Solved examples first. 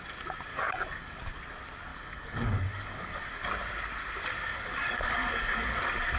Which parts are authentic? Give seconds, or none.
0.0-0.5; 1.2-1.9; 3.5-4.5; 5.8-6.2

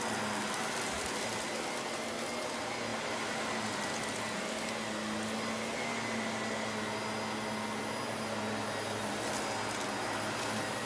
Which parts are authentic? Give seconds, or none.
0.0-10.9

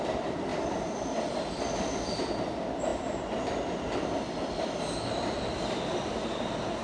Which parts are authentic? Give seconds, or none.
0.0-6.8